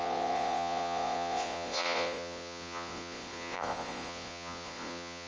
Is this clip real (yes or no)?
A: no